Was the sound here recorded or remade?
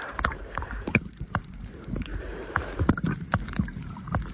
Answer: remade